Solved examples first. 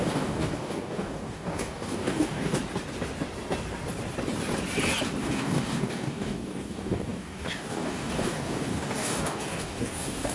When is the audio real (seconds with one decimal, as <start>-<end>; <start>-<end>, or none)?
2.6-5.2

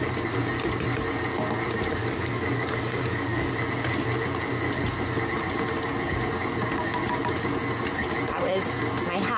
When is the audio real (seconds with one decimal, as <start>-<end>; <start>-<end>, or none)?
0.0-2.0; 3.5-9.4

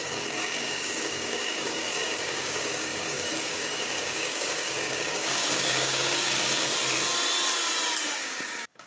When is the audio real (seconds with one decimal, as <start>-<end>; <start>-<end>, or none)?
6.7-8.2

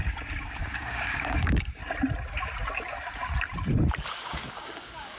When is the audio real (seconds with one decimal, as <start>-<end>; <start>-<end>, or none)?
0.0-0.6; 1.8-4.0

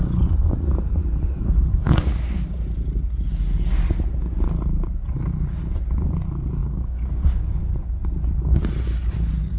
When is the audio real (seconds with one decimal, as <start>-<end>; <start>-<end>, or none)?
0.0-6.6; 7.6-9.6